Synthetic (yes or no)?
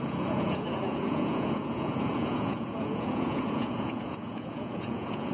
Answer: yes